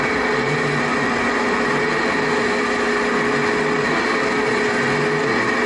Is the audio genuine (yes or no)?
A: yes